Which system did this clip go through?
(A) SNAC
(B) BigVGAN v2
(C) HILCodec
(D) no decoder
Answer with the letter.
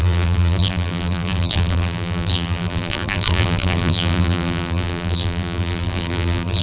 B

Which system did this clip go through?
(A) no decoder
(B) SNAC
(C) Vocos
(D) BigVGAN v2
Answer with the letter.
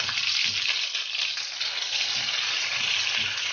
A